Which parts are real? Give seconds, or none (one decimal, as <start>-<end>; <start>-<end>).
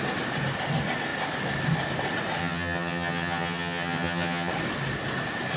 0.0-2.4; 4.5-5.6